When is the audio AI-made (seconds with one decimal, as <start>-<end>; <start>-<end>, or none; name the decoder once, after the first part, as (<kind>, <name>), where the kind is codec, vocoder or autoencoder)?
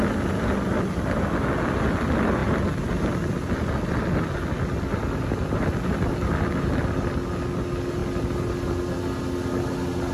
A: none